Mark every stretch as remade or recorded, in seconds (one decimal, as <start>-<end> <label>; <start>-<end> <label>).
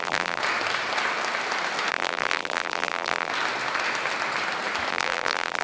0.0-0.4 remade; 0.4-1.9 recorded; 1.9-3.3 remade; 3.3-4.9 recorded; 4.9-5.6 remade